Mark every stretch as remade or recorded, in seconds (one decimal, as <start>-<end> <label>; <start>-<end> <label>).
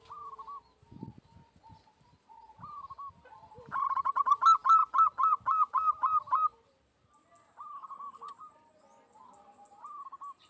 0.0-10.5 recorded